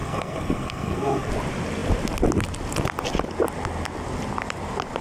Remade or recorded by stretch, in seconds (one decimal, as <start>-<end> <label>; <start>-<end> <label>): 0.0-1.3 remade; 1.3-5.0 recorded